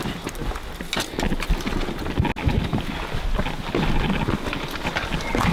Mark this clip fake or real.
real